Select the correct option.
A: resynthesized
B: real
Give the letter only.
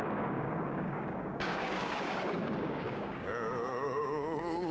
A